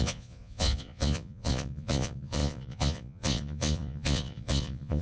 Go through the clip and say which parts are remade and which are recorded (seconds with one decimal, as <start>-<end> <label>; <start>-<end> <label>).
0.0-5.0 remade